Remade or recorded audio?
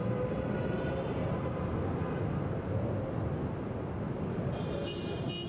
recorded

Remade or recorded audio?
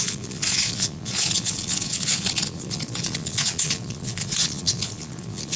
remade